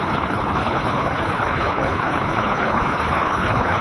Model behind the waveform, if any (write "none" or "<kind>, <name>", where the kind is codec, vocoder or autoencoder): codec, HILCodec